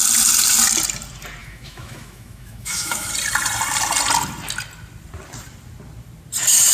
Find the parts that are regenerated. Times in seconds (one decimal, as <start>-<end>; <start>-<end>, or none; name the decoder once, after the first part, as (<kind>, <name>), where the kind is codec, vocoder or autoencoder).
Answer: 1.4-3.1 (autoencoder, DAC-VAE)